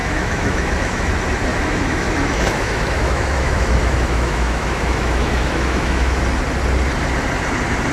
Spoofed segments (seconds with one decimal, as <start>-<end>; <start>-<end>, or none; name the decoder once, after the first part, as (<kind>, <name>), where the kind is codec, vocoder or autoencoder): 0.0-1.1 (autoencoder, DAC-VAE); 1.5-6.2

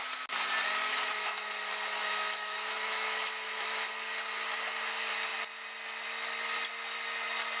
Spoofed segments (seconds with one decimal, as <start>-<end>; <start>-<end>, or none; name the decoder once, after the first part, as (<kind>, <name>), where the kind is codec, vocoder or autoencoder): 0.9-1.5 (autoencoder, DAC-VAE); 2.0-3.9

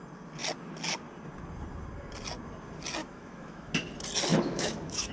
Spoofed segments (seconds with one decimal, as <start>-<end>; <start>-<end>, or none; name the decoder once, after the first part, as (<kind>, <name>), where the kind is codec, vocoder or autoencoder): 3.0-3.7 (autoencoder, DAC-VAE); 4.3-5.1

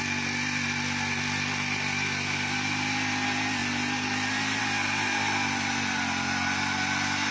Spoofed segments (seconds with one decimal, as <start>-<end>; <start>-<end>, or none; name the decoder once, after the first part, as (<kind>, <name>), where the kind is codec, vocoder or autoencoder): none

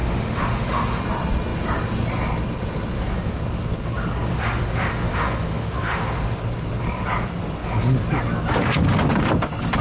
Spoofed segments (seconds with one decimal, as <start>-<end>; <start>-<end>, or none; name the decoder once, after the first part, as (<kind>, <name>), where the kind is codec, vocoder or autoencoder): 0.0-1.0 (autoencoder, DAC-VAE); 4.3-6.4

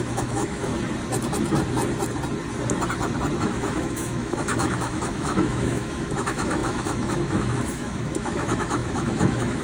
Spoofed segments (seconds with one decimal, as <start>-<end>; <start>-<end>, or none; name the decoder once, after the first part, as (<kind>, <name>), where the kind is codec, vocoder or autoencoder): 0.0-0.7 (autoencoder, DAC-VAE); 3.4-9.6

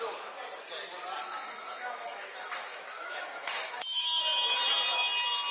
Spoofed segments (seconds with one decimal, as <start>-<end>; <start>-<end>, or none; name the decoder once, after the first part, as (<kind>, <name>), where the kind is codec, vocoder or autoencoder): 1.2-4.2 (autoencoder, DAC-VAE)